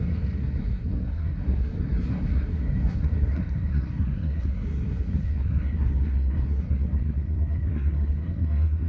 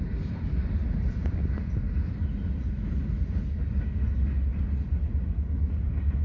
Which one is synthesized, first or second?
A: first